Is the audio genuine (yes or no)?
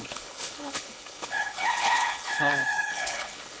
no